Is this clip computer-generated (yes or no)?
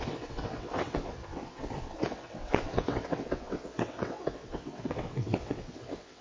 yes